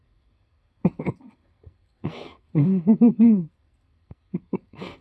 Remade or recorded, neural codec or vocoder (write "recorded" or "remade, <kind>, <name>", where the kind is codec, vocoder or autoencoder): remade, codec, SNAC